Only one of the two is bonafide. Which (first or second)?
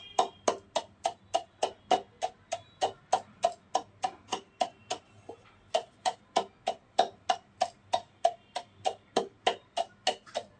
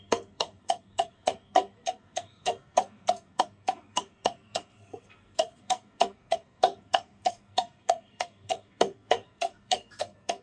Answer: first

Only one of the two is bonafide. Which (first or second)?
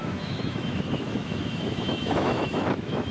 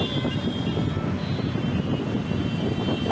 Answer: second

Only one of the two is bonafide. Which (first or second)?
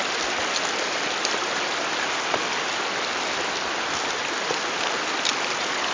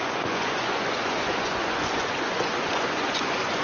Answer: first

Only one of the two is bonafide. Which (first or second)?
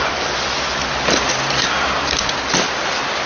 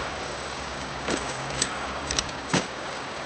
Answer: first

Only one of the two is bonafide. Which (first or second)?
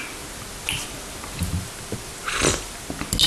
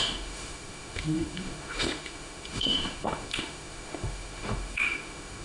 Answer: first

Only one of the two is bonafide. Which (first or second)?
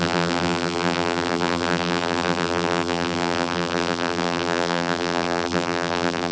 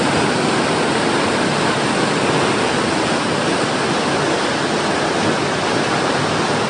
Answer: second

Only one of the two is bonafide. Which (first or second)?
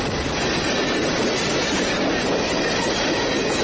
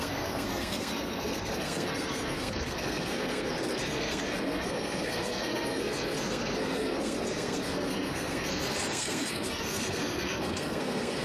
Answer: first